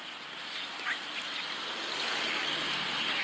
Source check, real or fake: real